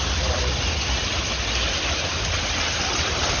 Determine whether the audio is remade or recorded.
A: recorded